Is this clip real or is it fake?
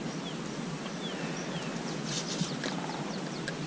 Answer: real